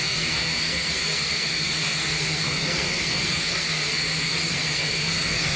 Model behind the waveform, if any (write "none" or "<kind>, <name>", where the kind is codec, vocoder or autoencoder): codec, SNAC